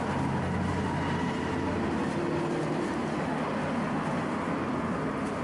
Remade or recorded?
recorded